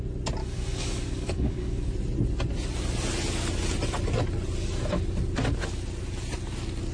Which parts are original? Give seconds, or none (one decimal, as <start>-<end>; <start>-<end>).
0.0-0.4; 1.9-6.9